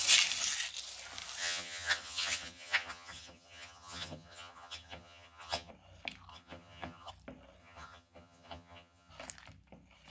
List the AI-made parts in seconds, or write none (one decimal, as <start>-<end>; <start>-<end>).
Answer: 1.4-5.7; 6.3-7.1; 7.6-9.1

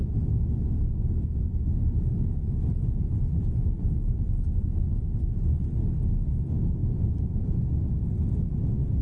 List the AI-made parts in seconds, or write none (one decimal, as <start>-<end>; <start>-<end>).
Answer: 0.6-5.2

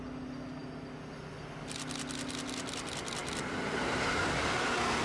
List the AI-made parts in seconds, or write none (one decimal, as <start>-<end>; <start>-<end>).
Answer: none

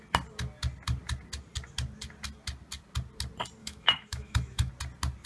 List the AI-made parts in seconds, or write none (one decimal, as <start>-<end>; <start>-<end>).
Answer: 3.6-4.7

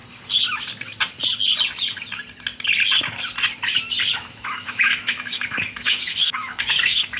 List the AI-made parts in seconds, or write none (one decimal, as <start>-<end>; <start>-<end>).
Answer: 4.1-7.2